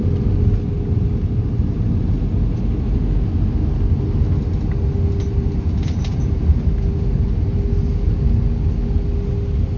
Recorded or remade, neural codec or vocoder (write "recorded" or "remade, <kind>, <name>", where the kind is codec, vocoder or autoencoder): recorded